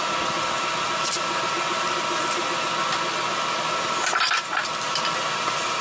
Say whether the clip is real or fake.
real